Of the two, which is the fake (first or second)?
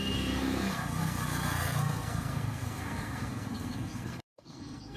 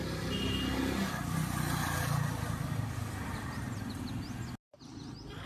first